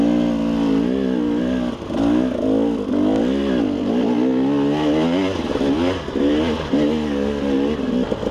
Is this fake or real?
real